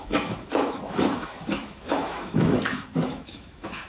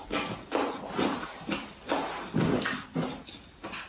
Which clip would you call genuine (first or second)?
second